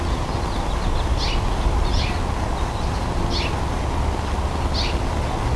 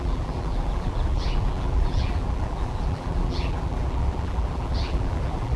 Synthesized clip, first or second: second